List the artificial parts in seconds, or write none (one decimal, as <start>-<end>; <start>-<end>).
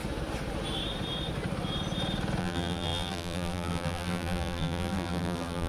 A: 2.4-5.7